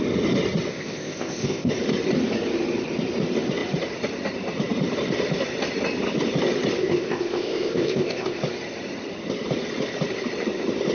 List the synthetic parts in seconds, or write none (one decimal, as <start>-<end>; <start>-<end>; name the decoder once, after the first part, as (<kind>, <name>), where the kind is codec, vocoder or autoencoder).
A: 0.7-1.7 (codec, ZipCodec); 6.8-8.4